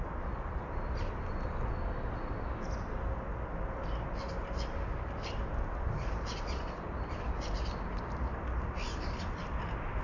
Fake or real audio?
real